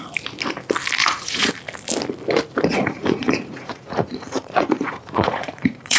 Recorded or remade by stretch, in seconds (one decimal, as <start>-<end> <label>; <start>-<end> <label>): 0.0-1.0 recorded; 1.0-1.5 remade; 1.5-2.7 recorded; 2.7-6.0 remade